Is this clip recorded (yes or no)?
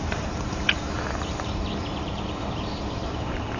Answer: no